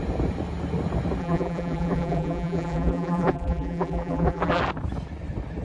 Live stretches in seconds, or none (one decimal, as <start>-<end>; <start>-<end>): 0.0-1.2; 4.6-5.6